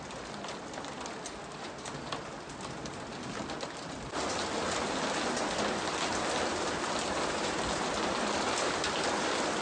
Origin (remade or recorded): recorded